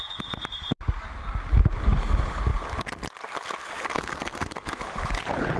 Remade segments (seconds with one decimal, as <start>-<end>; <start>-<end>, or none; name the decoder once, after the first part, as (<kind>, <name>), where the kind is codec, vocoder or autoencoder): 3.9-4.8 (codec, SNAC)